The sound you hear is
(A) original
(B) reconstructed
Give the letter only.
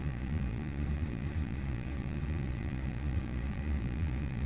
B